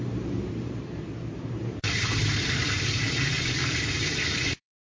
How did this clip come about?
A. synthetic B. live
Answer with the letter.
A